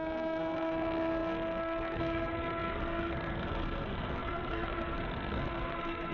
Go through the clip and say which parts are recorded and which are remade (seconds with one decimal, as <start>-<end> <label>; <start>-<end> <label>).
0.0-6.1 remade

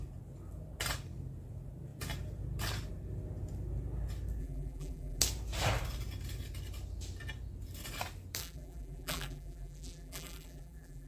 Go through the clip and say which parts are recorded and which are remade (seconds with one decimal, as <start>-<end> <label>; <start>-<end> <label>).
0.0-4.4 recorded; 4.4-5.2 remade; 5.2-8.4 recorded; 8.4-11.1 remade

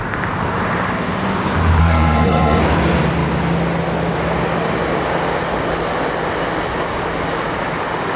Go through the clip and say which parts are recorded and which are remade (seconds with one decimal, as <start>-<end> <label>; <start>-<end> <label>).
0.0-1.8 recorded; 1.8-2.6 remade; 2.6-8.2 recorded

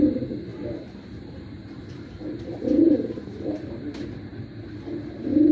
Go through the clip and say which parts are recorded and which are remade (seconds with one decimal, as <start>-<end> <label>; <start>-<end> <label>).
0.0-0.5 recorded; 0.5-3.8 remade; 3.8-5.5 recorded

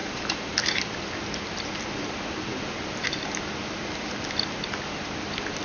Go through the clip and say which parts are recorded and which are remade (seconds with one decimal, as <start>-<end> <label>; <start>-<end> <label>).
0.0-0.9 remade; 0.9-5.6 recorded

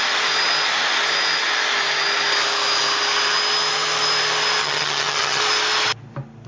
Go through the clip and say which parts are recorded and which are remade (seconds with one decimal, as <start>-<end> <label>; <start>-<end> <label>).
0.0-4.6 recorded; 4.6-5.4 remade; 5.4-6.5 recorded